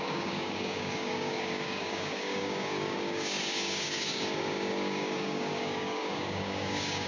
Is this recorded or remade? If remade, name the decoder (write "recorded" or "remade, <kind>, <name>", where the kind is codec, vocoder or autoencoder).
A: remade, codec, DAC